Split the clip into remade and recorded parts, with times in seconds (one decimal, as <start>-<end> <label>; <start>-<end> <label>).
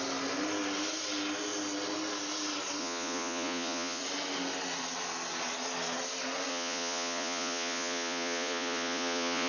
0.0-2.8 recorded; 2.8-4.0 remade; 4.0-6.5 recorded; 6.5-9.5 remade